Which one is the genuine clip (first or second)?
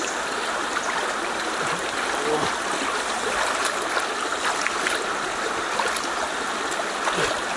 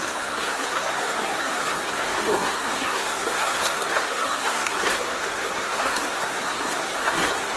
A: first